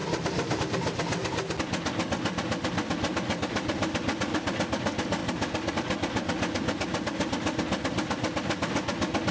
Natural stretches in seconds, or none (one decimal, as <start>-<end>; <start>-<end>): 0.0-9.3